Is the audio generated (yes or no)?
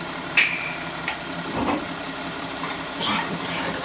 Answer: yes